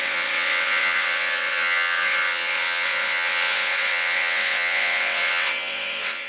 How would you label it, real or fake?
fake